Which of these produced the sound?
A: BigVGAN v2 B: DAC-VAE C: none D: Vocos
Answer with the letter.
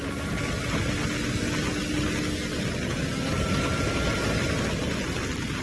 C